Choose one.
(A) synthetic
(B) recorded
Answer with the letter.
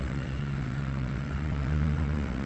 A